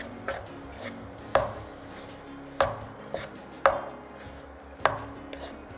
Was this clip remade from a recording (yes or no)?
no